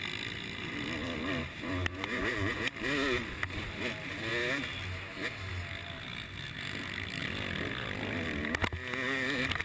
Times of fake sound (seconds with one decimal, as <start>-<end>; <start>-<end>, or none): 1.9-2.7